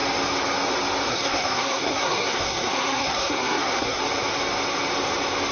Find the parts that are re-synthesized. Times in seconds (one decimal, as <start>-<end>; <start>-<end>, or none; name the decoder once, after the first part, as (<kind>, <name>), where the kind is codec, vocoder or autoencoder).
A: 1.1-4.0 (codec, SNAC)